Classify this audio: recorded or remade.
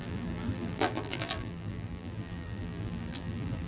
remade